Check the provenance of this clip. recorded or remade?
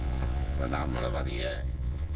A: remade